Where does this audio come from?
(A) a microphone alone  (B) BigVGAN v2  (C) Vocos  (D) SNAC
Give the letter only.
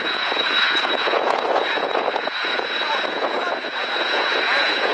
C